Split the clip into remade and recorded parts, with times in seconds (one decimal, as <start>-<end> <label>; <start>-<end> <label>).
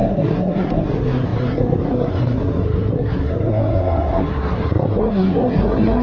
0.0-6.0 remade